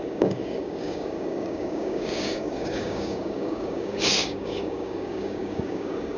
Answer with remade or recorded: remade